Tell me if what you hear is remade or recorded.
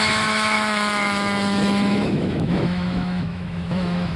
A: remade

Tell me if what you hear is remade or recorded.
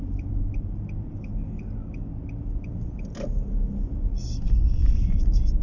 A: recorded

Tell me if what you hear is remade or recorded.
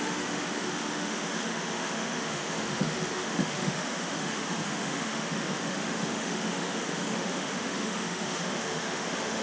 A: remade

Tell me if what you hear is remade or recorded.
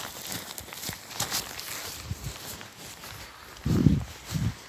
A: recorded